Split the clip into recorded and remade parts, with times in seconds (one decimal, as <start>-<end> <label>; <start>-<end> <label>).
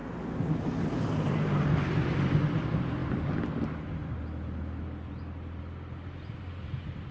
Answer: 0.0-7.1 recorded